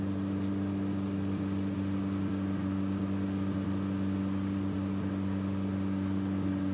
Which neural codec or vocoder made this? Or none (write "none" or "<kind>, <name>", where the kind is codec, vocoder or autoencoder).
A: none